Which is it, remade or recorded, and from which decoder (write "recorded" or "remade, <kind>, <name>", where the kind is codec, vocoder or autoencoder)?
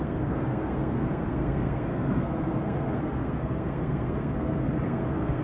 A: remade, codec, SNAC